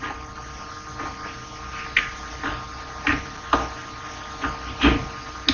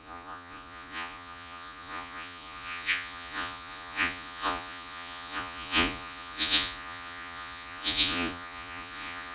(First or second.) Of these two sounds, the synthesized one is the second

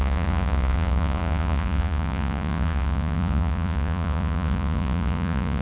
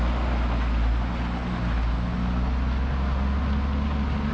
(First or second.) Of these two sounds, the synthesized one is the first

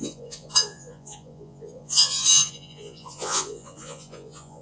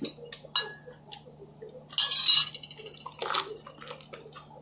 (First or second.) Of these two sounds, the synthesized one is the first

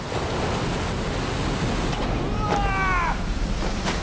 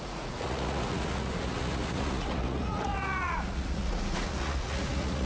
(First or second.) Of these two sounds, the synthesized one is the second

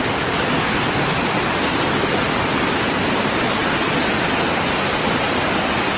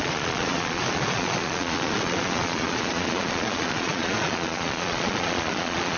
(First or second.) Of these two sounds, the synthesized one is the second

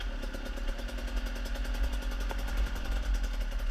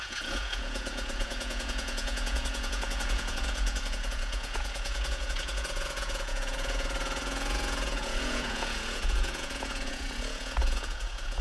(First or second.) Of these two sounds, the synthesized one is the second